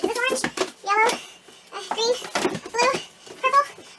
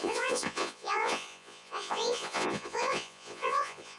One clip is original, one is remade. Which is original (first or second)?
first